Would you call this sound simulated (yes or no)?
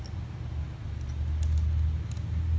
no